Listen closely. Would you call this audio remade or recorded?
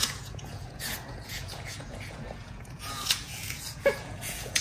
remade